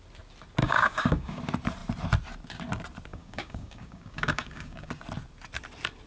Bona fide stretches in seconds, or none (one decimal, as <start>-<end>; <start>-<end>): 0.0-0.6; 1.4-3.1; 4.9-6.1